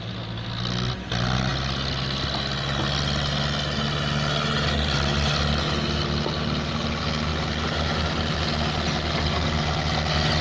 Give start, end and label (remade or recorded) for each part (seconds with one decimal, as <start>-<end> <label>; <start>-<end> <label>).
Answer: 0.0-10.4 recorded